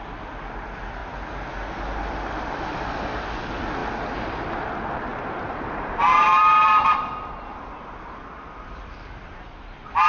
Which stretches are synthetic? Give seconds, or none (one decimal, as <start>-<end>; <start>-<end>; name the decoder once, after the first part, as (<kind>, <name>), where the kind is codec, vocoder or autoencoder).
5.1-6.4 (vocoder, BigVGAN v2)